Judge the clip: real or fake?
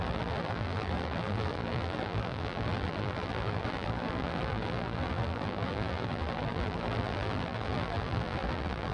fake